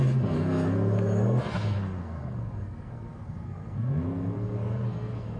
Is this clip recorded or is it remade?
remade